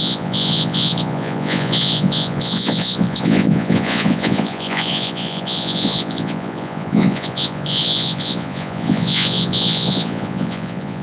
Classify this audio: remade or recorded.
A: remade